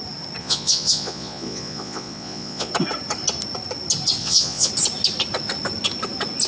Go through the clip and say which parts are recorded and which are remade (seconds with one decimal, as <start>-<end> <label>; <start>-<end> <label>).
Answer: 0.0-0.4 recorded; 0.4-2.7 remade; 2.7-4.2 recorded; 4.2-4.7 remade; 4.7-6.5 recorded